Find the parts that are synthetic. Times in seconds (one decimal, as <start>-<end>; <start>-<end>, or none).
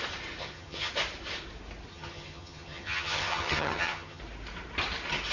0.4-0.9; 1.9-4.2